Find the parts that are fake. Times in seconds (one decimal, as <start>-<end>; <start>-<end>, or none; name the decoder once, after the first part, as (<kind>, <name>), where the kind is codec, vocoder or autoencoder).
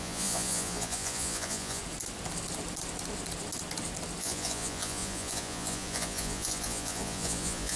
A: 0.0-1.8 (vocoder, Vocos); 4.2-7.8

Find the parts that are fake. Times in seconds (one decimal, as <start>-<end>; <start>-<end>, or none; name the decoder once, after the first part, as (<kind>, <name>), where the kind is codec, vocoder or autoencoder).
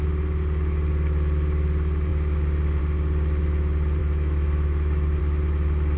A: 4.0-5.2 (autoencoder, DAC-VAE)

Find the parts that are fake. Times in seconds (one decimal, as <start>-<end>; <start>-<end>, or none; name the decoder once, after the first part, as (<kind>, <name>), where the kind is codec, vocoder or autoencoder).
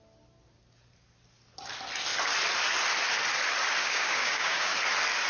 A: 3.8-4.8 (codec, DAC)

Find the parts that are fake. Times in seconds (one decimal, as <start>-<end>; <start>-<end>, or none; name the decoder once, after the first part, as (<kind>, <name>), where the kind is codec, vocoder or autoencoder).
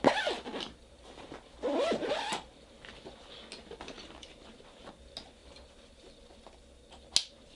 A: 0.5-3.1 (vocoder, BigVGAN v2); 5.4-5.9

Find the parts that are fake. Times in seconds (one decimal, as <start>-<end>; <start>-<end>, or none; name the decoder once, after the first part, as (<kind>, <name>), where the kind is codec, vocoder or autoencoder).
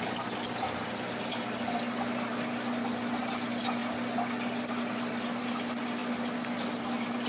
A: 0.0-2.3 (vocoder, BigVGAN v2); 3.2-3.8; 5.4-7.3